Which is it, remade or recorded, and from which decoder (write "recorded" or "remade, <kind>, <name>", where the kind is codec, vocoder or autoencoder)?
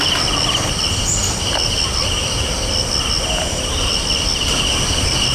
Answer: recorded